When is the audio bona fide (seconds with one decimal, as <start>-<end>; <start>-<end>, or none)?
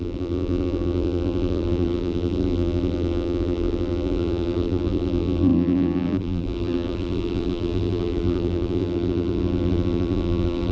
none